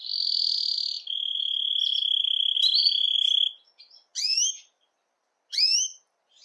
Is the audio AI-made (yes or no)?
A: no